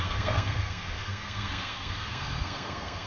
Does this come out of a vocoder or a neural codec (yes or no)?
yes